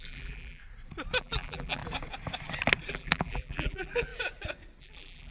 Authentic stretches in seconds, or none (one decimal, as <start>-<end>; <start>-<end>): 0.6-1.2; 1.8-2.9; 4.1-4.8